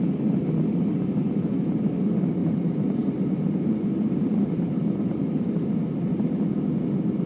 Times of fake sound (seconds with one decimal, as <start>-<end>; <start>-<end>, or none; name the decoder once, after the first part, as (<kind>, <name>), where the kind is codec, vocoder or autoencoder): 2.4-5.4 (vocoder, BigVGAN v2)